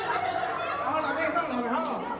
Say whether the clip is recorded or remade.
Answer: recorded